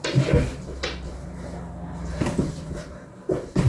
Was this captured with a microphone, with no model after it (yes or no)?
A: yes